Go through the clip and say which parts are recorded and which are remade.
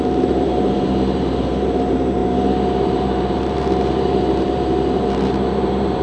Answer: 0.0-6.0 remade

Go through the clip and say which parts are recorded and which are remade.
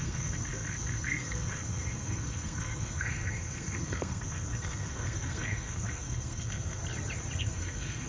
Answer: 0.0-6.8 remade; 6.8-7.4 recorded; 7.4-8.1 remade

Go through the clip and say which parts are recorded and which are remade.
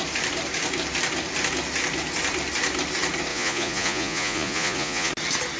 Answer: 0.0-3.3 recorded; 3.3-5.1 remade; 5.1-5.6 recorded